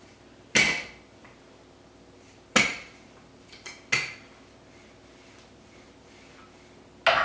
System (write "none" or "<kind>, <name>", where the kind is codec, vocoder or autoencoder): none